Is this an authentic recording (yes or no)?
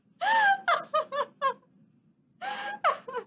yes